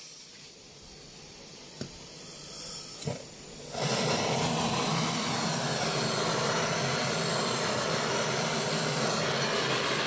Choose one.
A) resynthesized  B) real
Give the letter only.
B